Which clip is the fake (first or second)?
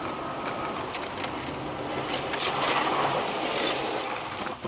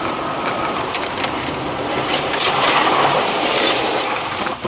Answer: second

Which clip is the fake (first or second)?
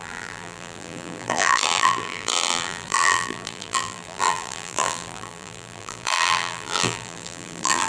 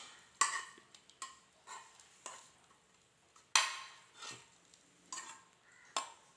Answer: first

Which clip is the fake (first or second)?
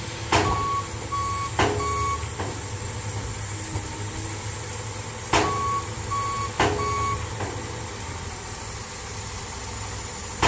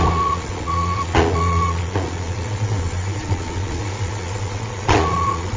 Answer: second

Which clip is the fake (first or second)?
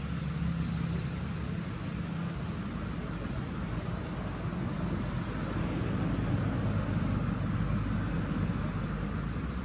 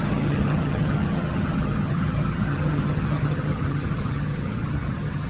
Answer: second